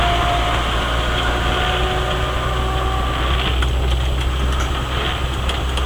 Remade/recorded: recorded